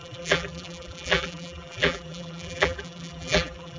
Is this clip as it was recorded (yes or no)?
no